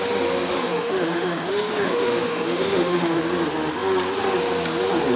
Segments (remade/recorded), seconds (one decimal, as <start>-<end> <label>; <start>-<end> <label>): 0.0-0.5 recorded; 0.5-3.2 remade; 3.2-5.2 recorded